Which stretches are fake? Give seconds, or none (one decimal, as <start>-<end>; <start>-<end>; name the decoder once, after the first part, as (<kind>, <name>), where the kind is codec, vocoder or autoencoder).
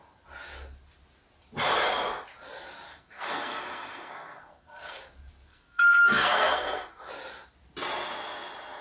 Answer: 2.9-5.0 (codec, SNAC); 5.5-7.1